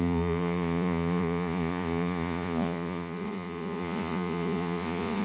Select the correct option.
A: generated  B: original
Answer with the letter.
A